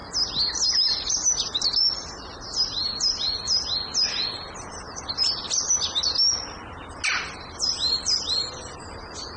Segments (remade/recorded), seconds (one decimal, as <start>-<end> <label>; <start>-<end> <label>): 0.0-9.4 recorded

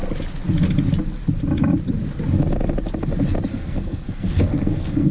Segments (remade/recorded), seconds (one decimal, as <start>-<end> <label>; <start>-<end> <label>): 0.0-3.5 recorded; 3.5-5.1 remade

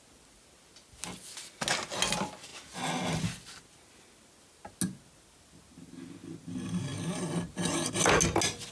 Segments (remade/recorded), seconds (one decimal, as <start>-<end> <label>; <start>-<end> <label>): 0.0-8.7 recorded

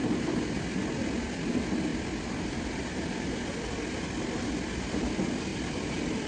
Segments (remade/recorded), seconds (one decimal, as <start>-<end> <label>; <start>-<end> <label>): 0.0-1.9 recorded; 1.9-2.7 remade; 2.7-5.5 recorded; 5.5-6.3 remade

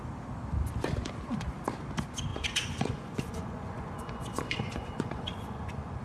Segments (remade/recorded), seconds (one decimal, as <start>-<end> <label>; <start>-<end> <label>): 0.0-2.3 recorded; 2.3-6.0 remade

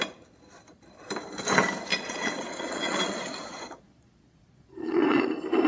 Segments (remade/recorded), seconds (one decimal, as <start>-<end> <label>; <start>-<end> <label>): 0.0-1.9 recorded; 1.9-5.3 remade; 5.3-5.7 recorded

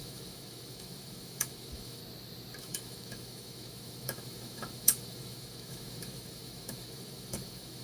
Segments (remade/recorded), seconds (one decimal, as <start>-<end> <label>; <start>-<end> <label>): 0.0-2.0 remade; 2.0-2.6 recorded; 2.6-7.8 remade